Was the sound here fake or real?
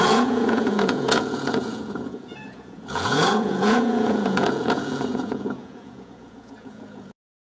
fake